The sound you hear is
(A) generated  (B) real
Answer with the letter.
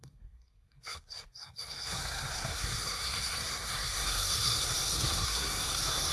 A